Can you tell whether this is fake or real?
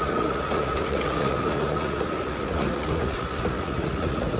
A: fake